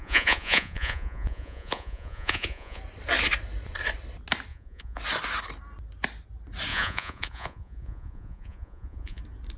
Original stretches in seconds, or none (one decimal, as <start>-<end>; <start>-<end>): 2.8-4.5; 5.0-6.7; 9.2-9.6